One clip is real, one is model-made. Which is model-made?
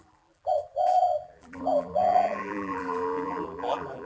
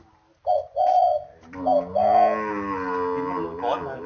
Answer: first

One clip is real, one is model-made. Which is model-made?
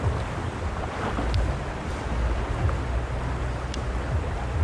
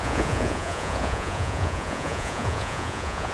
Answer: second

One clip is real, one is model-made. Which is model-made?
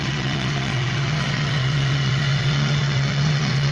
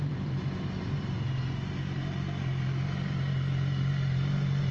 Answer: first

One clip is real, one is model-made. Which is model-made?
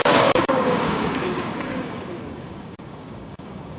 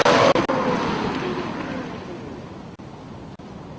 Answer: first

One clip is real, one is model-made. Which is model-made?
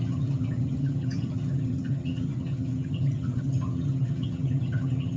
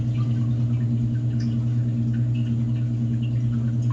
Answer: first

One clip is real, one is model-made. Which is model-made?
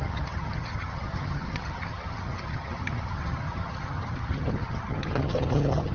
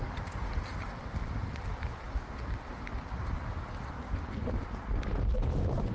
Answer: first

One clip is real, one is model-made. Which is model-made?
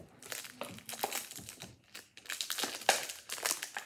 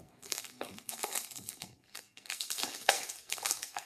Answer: second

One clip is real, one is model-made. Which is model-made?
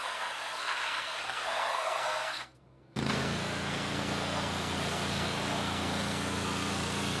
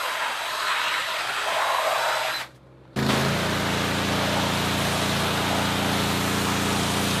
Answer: first